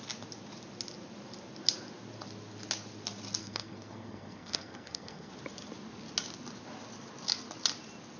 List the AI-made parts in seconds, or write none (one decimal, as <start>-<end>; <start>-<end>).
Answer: 3.4-5.3